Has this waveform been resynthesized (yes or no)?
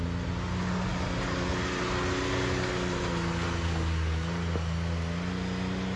no